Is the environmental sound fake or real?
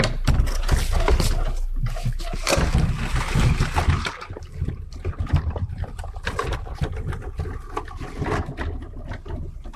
real